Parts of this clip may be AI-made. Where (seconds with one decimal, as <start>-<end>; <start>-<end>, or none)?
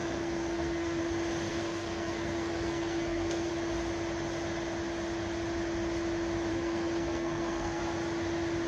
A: 0.0-1.0; 1.5-3.5; 6.5-7.8